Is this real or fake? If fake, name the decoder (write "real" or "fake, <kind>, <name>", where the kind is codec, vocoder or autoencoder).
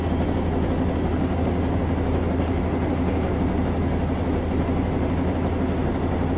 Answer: real